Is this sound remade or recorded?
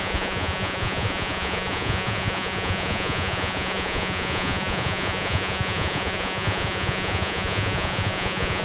remade